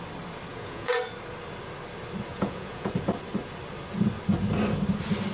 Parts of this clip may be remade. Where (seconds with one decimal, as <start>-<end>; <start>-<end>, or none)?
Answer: 0.5-1.0; 2.3-2.9

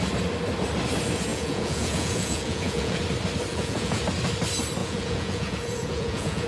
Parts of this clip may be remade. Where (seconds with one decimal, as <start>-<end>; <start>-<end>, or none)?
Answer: 1.3-3.0; 3.5-4.0; 4.8-6.5

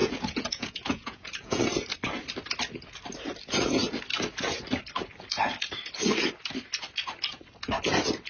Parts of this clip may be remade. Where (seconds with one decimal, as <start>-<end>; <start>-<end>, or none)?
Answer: 0.0-1.6